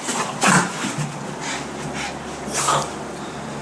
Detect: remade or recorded recorded